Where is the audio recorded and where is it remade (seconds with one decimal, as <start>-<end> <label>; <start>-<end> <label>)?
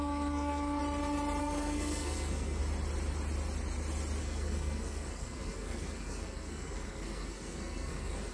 0.0-0.8 remade; 0.8-1.4 recorded; 1.4-2.6 remade; 2.6-4.2 recorded; 4.2-8.3 remade